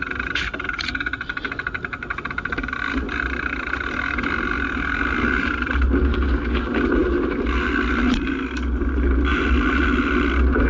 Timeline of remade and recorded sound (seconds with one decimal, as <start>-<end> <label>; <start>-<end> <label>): 0.0-10.7 recorded